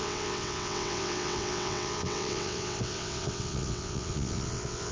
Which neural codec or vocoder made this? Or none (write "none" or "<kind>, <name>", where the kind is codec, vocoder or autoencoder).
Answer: vocoder, WaveNeXt